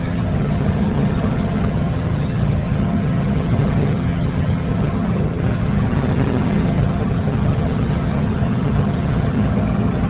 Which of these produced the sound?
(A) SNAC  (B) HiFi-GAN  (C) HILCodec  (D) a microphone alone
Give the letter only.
B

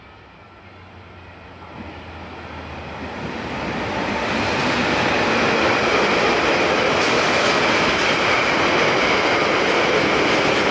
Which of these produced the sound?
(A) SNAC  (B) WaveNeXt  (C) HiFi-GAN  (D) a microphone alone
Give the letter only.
D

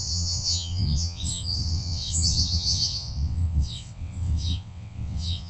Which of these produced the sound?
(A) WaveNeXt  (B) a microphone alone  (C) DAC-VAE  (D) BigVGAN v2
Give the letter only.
A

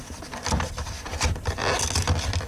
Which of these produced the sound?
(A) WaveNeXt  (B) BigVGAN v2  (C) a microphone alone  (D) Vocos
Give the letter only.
C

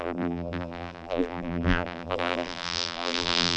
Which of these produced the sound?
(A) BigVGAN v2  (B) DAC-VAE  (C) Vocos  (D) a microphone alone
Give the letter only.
A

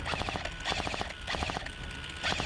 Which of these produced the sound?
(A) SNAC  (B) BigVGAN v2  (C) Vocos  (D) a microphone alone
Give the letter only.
D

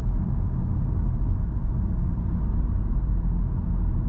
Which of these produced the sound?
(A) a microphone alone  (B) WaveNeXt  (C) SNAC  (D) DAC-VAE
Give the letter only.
A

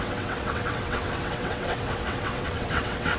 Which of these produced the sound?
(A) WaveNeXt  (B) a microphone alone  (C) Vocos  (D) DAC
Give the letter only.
A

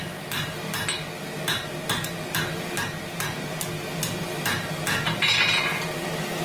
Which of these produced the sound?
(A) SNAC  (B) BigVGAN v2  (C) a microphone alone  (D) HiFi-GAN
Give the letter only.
C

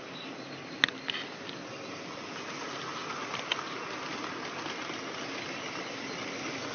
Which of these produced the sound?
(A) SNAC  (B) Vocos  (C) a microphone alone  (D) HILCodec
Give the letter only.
C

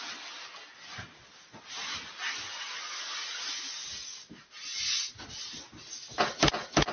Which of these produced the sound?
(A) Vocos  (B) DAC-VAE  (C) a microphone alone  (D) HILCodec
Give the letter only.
C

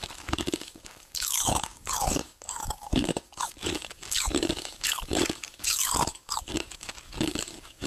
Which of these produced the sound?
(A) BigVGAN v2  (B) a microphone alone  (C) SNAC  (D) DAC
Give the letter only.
D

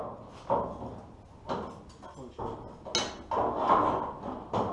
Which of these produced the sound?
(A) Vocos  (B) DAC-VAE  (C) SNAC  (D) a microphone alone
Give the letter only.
D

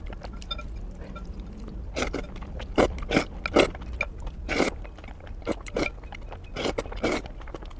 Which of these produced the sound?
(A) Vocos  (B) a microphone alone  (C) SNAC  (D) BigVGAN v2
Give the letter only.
B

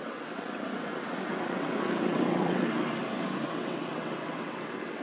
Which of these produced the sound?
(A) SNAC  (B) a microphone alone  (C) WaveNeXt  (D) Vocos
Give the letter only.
C